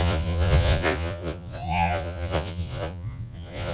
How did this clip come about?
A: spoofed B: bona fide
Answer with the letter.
A